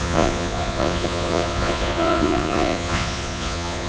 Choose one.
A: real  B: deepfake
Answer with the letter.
B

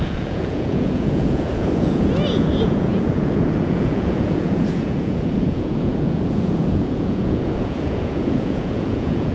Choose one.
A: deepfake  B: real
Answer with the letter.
A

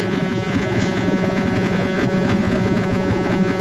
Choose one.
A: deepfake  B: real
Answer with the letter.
A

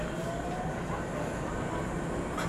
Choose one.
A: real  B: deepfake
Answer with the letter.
A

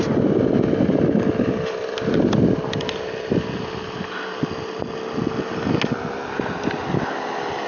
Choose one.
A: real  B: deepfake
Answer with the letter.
A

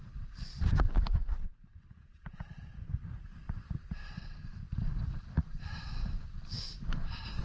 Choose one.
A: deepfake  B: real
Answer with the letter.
A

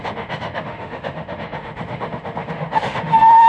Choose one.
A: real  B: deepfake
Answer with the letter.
B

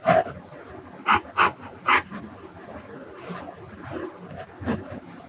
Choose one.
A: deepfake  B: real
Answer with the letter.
B